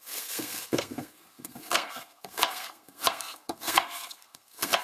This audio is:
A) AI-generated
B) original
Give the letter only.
A